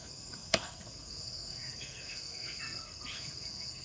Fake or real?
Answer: fake